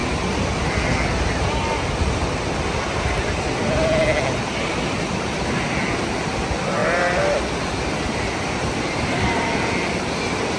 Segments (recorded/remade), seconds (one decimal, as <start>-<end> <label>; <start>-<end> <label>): 0.0-10.6 recorded

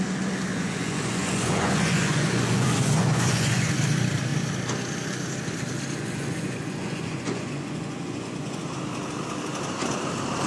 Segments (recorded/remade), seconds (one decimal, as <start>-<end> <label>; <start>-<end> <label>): 0.0-0.5 recorded; 0.5-3.7 remade; 3.7-6.0 recorded; 6.0-8.6 remade; 8.6-10.5 recorded

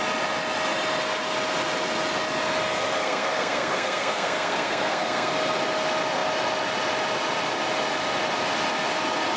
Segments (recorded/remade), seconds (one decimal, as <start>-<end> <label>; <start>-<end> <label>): 0.0-3.0 recorded; 3.0-5.3 remade; 5.3-9.4 recorded

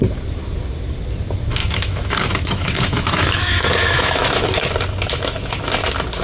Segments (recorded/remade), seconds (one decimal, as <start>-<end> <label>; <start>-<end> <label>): 0.0-1.6 recorded; 1.6-4.7 remade; 4.7-6.2 recorded

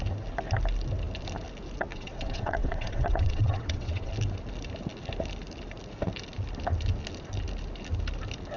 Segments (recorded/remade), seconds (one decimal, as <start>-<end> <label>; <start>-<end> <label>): 0.0-1.9 recorded; 1.9-4.1 remade; 4.1-8.6 recorded

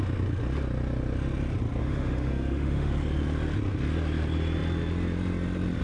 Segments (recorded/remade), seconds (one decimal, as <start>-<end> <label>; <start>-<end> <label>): 0.0-1.8 recorded; 1.8-2.9 remade; 2.9-5.8 recorded